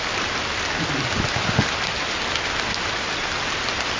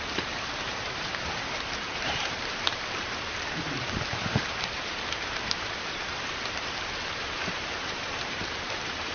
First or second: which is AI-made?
second